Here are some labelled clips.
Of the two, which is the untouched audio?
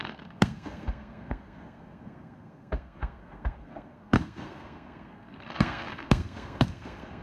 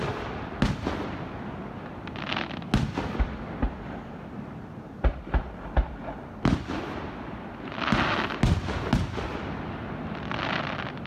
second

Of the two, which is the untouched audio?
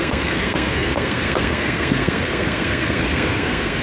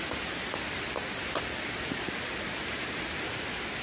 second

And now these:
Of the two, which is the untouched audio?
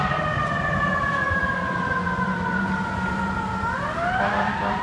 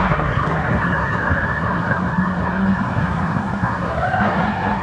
first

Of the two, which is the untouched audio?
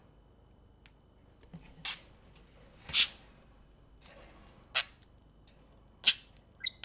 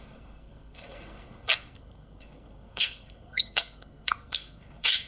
first